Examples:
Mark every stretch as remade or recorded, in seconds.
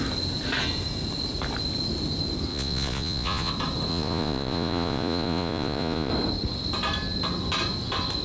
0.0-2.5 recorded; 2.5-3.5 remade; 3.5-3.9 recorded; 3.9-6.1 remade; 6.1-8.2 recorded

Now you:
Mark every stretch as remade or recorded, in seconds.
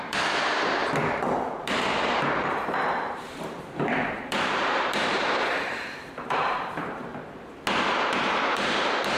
0.0-0.8 remade; 0.8-1.3 recorded; 1.3-7.1 remade; 7.1-8.5 recorded; 8.5-9.2 remade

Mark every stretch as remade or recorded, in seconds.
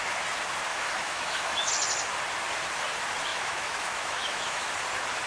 0.0-0.7 recorded; 0.7-1.7 remade; 1.7-3.3 recorded; 3.3-4.7 remade; 4.7-5.3 recorded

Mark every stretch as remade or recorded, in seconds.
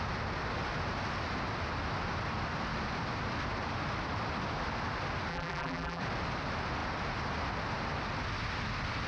0.0-5.3 recorded; 5.3-6.0 remade; 6.0-9.1 recorded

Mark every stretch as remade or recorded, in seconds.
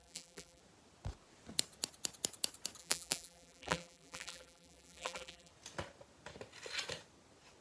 0.0-0.6 remade; 0.6-2.8 recorded; 2.8-5.5 remade; 5.5-7.6 recorded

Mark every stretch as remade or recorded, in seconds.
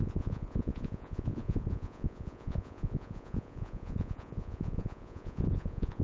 0.0-6.0 remade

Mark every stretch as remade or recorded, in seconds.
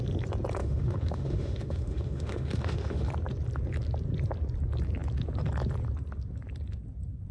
0.0-0.6 recorded; 0.6-3.1 remade; 3.1-7.3 recorded